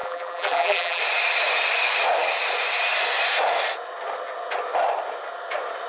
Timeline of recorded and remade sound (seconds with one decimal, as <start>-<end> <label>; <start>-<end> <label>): 0.0-1.0 remade; 1.0-5.9 recorded